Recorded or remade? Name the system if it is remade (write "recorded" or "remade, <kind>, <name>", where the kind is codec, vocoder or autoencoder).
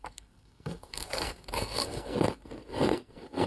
remade, codec, SNAC